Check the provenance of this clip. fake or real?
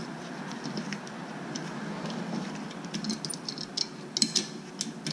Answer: real